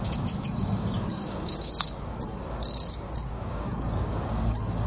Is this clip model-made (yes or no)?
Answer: yes